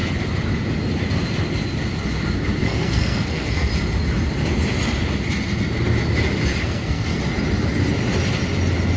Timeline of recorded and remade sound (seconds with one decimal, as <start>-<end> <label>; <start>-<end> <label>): 0.0-2.6 recorded; 2.6-3.7 remade; 3.7-6.6 recorded; 6.6-7.2 remade; 7.2-9.0 recorded